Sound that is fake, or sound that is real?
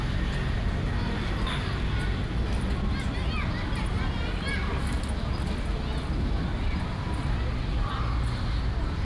real